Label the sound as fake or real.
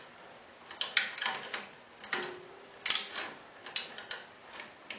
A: real